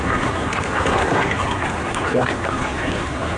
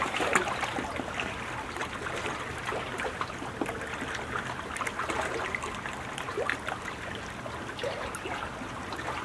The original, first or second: second